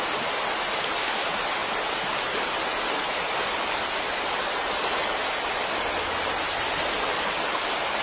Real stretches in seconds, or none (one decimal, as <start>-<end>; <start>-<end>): 0.0-8.0